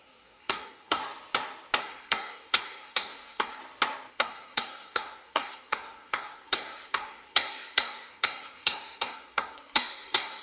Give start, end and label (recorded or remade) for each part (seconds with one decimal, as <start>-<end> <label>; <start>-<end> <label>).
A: 0.0-1.0 remade; 1.0-1.8 recorded; 1.8-3.6 remade; 3.6-4.1 recorded; 4.1-10.4 remade